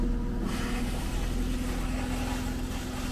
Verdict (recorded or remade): recorded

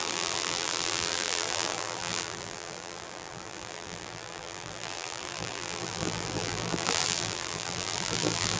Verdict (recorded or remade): remade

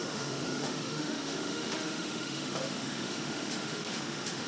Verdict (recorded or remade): remade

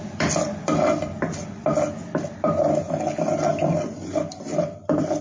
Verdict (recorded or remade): recorded